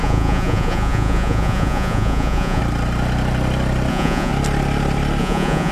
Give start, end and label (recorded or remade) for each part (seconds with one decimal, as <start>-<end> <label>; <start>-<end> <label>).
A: 0.0-2.6 remade; 2.6-3.9 recorded; 3.9-4.3 remade; 4.3-5.2 recorded; 5.2-5.7 remade